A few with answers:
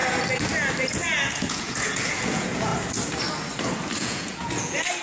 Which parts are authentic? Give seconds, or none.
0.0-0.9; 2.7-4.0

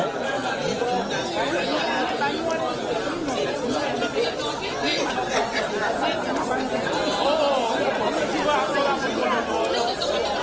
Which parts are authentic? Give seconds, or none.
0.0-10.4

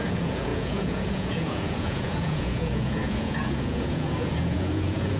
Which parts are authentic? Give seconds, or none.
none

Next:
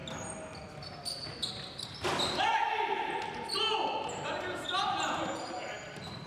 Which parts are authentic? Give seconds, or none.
0.0-6.3

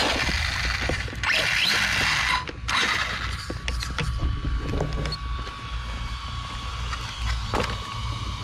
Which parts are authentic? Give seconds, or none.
0.0-8.4